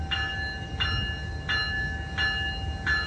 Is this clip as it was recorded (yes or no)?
yes